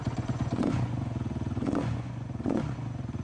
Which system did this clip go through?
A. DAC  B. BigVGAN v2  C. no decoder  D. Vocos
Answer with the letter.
D